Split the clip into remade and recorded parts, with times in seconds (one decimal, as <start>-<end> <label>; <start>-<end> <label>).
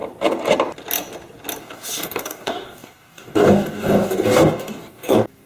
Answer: 0.0-1.6 recorded; 1.6-5.5 remade